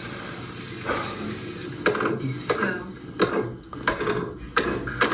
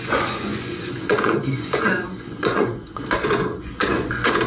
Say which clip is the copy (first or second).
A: second